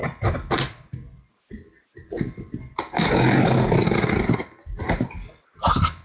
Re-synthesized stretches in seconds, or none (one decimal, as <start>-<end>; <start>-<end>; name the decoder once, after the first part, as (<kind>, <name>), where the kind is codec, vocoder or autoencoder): none